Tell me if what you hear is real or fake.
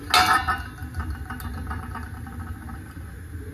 real